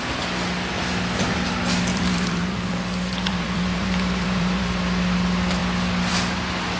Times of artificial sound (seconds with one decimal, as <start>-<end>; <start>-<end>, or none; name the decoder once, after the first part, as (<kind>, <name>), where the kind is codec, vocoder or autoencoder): 1.9-4.8 (vocoder, BigVGAN v2)